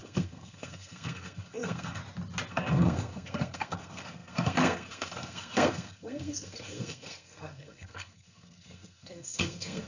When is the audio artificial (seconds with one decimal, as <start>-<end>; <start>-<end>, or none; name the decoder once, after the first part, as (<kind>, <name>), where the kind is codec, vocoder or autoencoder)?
0.0-2.0 (codec, SNAC); 2.5-9.9